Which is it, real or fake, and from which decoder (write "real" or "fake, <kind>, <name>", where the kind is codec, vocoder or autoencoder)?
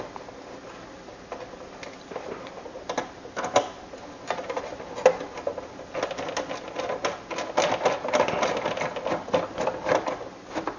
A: real